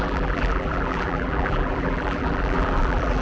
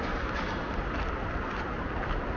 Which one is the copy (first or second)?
first